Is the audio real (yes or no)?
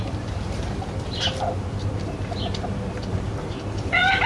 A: no